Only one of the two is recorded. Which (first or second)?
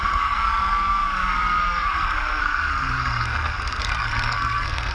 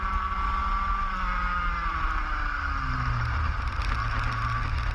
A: second